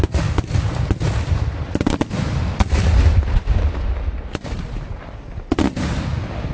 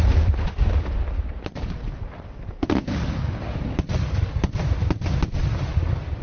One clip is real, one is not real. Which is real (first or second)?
first